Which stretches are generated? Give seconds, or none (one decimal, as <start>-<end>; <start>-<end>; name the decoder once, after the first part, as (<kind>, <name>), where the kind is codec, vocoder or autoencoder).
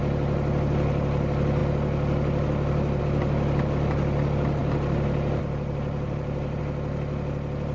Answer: 4.6-6.6 (vocoder, BigVGAN v2)